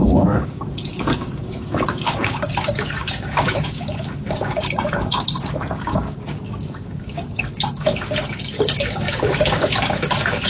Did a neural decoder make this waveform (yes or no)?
yes